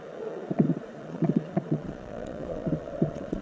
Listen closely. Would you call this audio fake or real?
fake